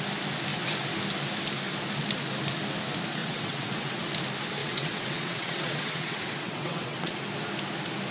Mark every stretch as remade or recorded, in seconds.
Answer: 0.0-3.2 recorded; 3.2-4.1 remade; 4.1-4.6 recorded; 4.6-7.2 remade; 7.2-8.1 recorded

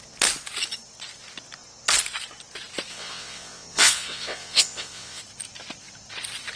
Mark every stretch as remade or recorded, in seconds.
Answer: 0.0-2.9 recorded; 2.9-5.2 remade; 5.2-6.6 recorded

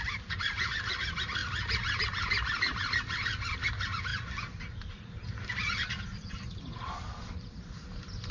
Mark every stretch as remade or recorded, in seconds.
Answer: 0.0-8.3 recorded

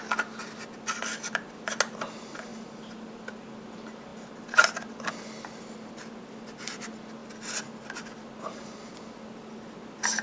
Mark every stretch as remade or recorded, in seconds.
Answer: 0.0-10.2 recorded

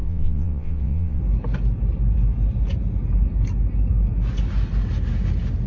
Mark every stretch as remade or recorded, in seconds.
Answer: 0.0-1.2 remade; 1.2-5.7 recorded

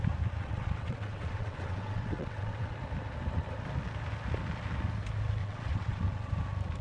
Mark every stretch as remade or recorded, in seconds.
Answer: 0.0-0.4 recorded; 0.4-2.7 remade; 2.7-5.4 recorded; 5.4-6.3 remade; 6.3-6.8 recorded

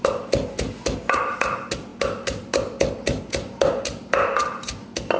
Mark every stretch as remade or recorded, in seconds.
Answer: 0.0-5.2 recorded